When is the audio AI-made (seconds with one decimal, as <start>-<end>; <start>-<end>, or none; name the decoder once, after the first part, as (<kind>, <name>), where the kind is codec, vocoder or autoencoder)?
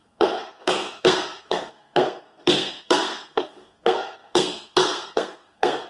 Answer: 0.0-5.9 (codec, SNAC)